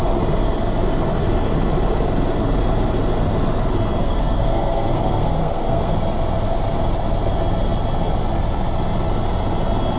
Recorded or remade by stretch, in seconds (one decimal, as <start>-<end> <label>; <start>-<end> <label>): 0.0-4.0 recorded; 4.0-5.9 remade; 5.9-10.0 recorded